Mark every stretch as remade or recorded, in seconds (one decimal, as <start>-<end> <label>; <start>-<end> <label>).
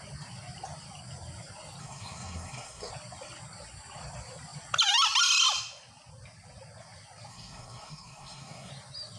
0.0-1.8 recorded; 1.8-2.9 remade; 2.9-7.3 recorded; 7.3-8.7 remade; 8.7-9.2 recorded